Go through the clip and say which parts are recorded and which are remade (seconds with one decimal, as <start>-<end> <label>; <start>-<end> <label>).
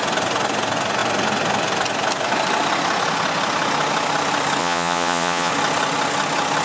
0.0-4.6 recorded; 4.6-5.5 remade; 5.5-6.6 recorded